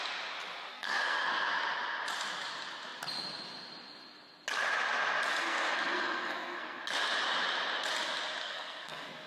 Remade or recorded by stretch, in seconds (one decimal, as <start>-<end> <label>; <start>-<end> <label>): 0.0-0.7 recorded; 0.7-1.5 remade; 1.5-5.4 recorded; 5.4-6.8 remade; 6.8-8.4 recorded; 8.4-9.3 remade